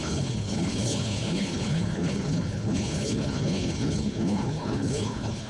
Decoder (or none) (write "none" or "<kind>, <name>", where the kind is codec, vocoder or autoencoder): codec, HILCodec